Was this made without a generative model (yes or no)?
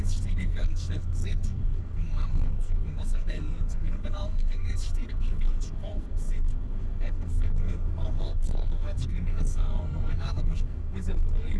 no